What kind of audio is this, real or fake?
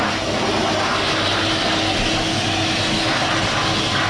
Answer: real